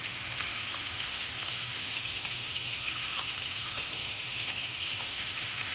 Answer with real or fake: fake